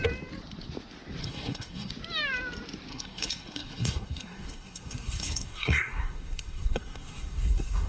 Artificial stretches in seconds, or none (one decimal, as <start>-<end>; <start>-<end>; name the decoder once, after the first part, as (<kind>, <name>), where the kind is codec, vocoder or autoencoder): 1.2-1.9 (codec, SNAC); 2.9-7.9